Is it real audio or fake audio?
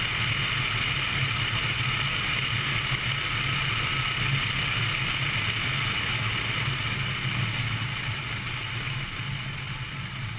real